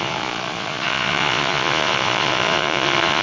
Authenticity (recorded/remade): remade